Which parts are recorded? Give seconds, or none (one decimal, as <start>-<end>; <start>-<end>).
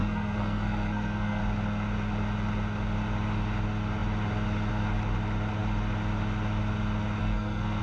1.4-7.2